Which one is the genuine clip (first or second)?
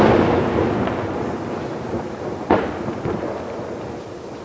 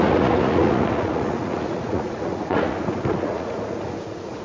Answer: first